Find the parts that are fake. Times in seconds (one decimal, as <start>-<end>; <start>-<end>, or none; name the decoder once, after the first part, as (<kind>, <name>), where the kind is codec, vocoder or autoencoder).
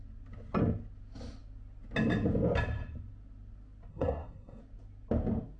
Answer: 3.9-4.6 (codec, SNAC)